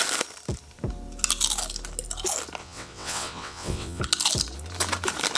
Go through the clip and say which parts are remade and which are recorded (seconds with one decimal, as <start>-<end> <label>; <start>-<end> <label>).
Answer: 0.0-2.6 recorded; 2.6-4.0 remade; 4.0-5.4 recorded